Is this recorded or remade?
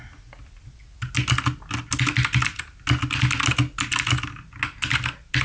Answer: recorded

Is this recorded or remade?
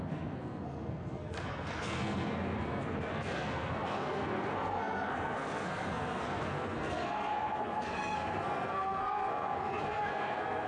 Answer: remade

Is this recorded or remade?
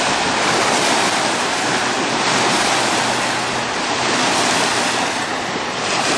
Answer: recorded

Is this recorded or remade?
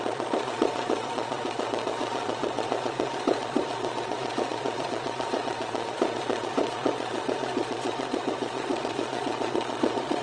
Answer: remade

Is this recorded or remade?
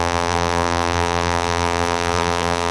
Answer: remade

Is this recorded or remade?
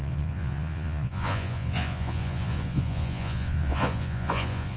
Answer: remade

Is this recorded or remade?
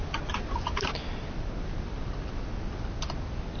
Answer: recorded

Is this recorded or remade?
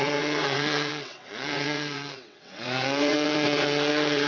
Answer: remade